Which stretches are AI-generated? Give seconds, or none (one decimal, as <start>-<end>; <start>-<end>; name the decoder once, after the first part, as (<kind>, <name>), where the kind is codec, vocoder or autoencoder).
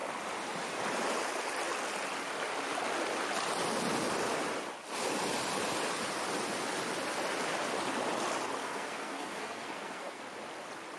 8.6-10.2 (codec, SNAC)